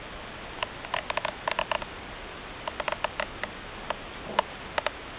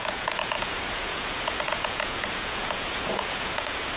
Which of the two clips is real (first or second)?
first